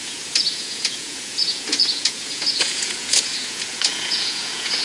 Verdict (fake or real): fake